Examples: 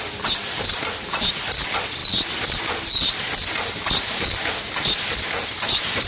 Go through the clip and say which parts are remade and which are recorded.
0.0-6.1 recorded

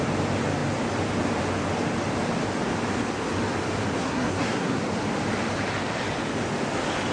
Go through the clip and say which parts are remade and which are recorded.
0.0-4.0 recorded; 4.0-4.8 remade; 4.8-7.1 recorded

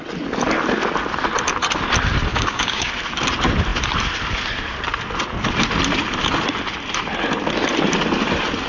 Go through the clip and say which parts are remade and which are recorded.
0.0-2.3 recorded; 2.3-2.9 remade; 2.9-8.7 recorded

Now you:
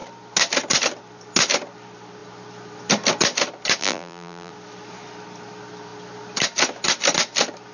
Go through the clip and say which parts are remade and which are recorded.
0.0-3.8 recorded; 3.8-4.5 remade; 4.5-7.7 recorded